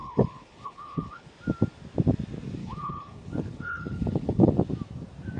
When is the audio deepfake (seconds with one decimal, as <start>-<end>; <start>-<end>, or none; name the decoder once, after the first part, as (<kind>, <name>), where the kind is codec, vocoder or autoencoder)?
0.0-1.3 (codec, HILCodec); 2.6-4.5